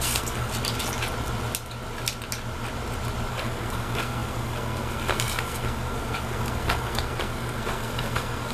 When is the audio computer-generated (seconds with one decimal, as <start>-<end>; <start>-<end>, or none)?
0.0-0.5; 3.3-8.5